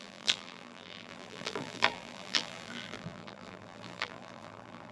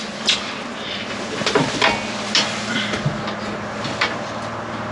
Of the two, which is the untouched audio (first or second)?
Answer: second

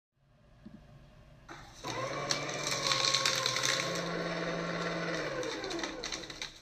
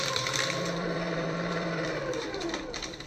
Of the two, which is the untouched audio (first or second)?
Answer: first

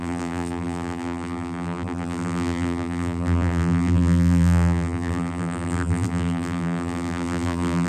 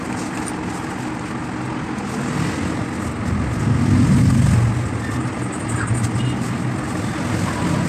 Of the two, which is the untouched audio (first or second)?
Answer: second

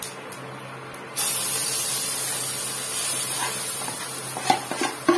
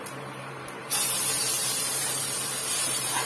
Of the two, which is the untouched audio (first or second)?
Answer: first